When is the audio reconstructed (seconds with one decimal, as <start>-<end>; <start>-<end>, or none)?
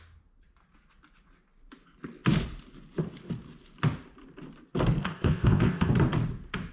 5.0-5.9